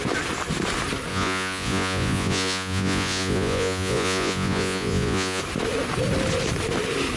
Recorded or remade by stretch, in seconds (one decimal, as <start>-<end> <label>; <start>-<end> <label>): 0.0-1.1 recorded; 1.1-5.4 remade; 5.4-7.2 recorded